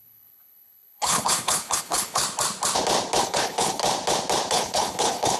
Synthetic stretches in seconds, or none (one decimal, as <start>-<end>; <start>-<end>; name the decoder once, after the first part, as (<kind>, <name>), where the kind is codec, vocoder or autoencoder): 0.0-2.2 (codec, HILCodec); 3.2-3.8; 4.5-5.4